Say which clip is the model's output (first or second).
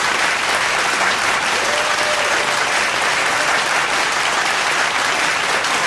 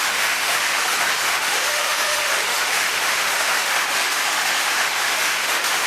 second